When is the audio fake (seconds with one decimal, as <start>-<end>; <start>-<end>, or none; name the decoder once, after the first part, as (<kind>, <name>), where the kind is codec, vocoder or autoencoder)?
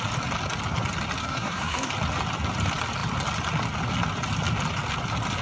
1.2-1.9 (codec, SNAC)